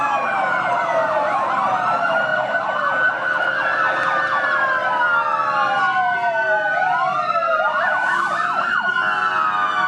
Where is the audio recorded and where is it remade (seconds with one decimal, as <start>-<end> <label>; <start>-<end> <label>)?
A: 0.0-2.3 remade; 2.3-3.1 recorded; 3.1-9.9 remade